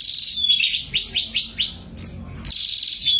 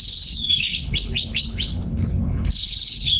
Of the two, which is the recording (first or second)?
first